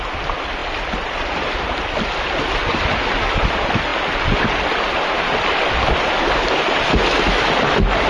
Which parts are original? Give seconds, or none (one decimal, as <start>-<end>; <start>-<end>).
0.0-8.1